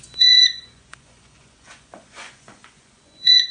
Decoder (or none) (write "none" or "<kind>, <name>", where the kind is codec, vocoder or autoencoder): vocoder, Vocos